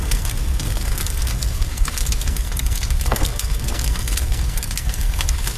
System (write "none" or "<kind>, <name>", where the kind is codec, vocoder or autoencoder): codec, SNAC